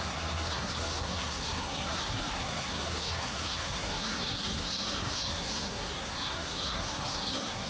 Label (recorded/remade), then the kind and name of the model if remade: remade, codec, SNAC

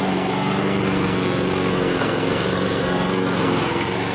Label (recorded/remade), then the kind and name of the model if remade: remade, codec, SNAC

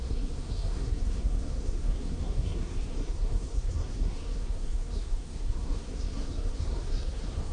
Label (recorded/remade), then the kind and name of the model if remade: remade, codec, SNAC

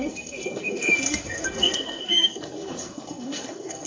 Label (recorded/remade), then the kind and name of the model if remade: remade, codec, SNAC